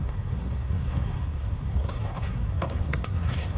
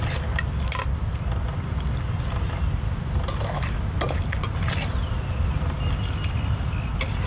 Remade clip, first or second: first